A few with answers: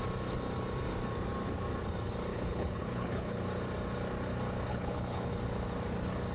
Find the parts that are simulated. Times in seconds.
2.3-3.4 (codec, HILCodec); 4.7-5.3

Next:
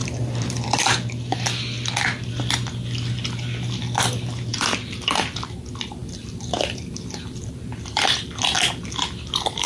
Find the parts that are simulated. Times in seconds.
0.0-1.1 (vocoder, BigVGAN v2); 4.5-5.6; 6.0-8.4

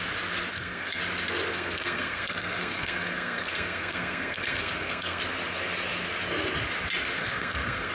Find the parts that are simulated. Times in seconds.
0.5-1.0 (codec, SNAC); 1.5-5.2; 7.2-7.9